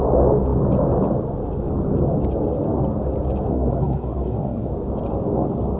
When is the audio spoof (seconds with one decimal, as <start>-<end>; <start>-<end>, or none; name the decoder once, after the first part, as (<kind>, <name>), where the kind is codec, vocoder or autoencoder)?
3.5-4.7 (codec, SNAC)